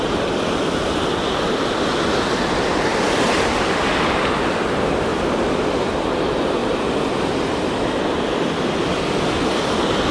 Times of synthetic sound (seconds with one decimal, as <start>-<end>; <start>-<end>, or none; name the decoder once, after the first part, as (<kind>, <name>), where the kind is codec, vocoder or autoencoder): 5.1-5.7 (vocoder, BigVGAN v2)